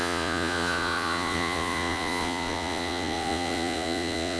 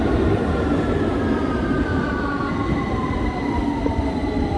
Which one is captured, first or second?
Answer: second